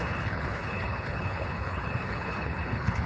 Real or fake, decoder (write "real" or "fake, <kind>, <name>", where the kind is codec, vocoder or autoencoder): fake, codec, HILCodec